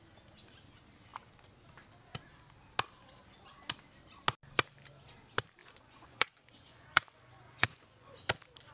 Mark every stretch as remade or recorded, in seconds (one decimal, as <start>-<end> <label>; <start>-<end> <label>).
0.0-5.6 recorded; 5.6-8.1 remade; 8.1-8.7 recorded